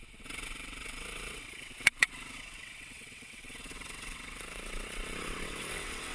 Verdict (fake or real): fake